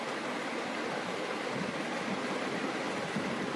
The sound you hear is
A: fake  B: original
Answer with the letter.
B